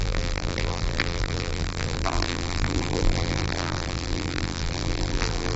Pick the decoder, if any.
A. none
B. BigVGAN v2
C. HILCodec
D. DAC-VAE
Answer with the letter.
B